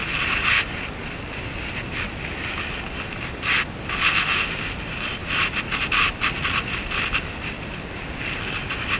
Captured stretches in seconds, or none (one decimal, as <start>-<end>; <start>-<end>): 0.0-9.0